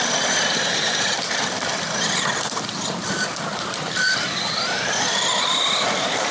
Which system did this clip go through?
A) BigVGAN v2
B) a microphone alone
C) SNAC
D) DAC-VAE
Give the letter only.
A